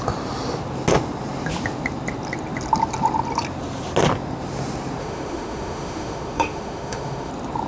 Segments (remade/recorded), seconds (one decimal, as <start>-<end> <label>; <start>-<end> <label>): 0.0-5.0 recorded; 5.0-7.3 remade; 7.3-7.7 recorded